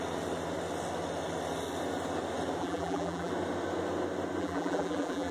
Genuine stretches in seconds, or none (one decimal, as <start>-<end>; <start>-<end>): 0.0-2.6; 3.3-4.4